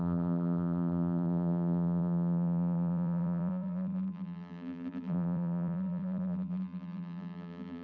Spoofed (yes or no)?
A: yes